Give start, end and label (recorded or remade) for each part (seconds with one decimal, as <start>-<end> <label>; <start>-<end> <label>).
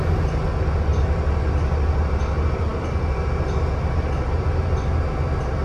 0.0-5.6 recorded